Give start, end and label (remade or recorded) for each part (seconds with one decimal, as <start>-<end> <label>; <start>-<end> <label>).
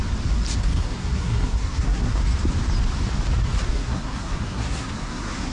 0.0-0.6 recorded; 0.6-2.2 remade; 2.2-3.7 recorded; 3.7-5.5 remade